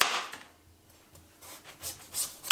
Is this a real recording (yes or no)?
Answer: yes